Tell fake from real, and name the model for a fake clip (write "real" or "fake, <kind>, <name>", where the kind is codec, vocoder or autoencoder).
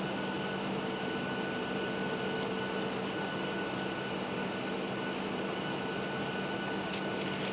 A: real